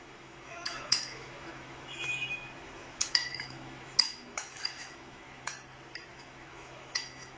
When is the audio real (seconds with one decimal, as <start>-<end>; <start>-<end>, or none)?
5.5-6.1